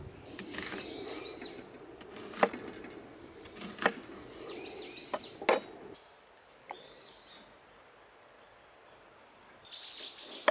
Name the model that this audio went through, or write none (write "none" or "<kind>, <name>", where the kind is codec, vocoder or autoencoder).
none